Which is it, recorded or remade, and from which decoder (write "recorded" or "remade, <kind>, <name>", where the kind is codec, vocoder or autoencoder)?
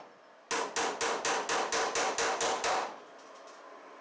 recorded